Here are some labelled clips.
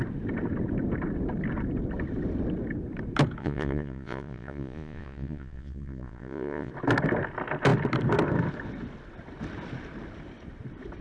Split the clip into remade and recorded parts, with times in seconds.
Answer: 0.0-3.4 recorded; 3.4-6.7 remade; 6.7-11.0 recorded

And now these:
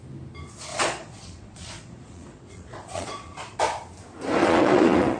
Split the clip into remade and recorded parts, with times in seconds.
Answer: 0.0-0.7 recorded; 0.7-3.6 remade; 3.6-4.4 recorded; 4.4-5.2 remade

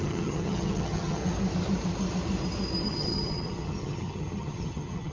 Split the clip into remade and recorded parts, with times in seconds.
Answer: 0.0-1.2 remade; 1.2-2.8 recorded; 2.8-5.1 remade

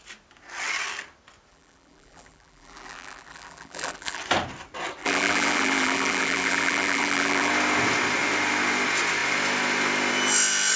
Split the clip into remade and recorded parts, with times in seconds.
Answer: 0.0-1.5 recorded; 1.5-4.2 remade; 4.2-5.0 recorded; 5.0-7.5 remade; 7.5-10.8 recorded